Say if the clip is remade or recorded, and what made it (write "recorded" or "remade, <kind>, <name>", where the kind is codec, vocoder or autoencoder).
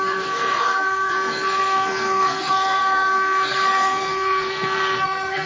remade, codec, SNAC